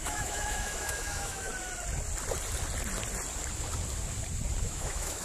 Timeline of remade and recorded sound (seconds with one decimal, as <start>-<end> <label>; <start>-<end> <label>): 0.0-1.5 remade; 1.5-4.6 recorded; 4.6-5.2 remade